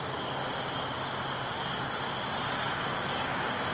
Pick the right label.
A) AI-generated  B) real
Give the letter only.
B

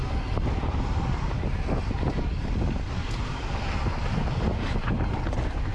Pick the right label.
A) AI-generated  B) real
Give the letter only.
B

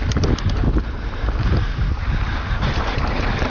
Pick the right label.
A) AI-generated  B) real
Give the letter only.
B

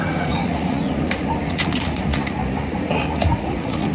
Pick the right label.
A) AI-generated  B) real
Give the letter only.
A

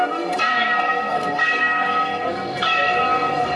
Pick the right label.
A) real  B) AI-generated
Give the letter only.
B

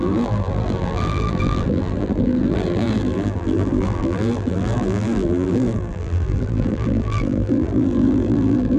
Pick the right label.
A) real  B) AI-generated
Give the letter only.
B